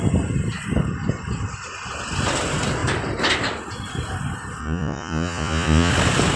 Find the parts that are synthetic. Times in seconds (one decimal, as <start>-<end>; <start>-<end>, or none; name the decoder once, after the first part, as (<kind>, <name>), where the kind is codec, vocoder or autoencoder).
4.6-5.9 (vocoder, Vocos)